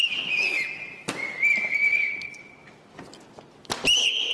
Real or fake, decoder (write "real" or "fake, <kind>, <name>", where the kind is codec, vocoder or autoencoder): real